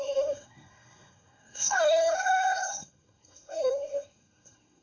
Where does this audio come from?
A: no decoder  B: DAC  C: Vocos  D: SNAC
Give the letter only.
D